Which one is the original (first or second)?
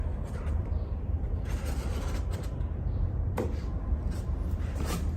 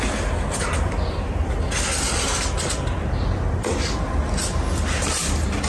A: second